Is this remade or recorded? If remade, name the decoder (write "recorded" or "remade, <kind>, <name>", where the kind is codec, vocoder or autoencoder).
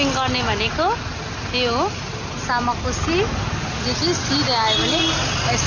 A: recorded